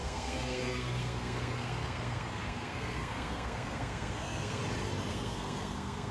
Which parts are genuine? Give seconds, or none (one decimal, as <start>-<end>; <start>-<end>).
4.6-5.1